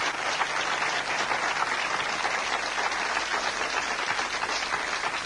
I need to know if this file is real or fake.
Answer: real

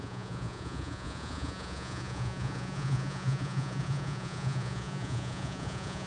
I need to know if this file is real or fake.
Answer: fake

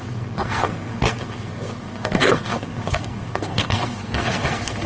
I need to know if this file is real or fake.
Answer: fake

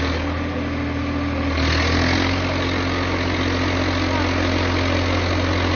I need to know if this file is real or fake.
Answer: real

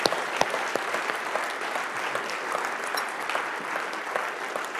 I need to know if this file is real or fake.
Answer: fake